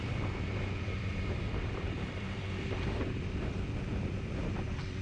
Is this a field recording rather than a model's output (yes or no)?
no